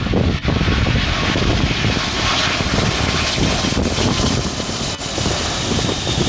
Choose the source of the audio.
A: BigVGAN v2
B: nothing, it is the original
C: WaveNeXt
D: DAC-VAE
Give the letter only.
B